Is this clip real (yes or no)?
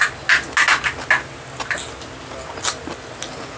yes